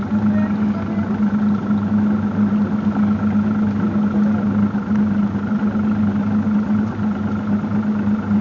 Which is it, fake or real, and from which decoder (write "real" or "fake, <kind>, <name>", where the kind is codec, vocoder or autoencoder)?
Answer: real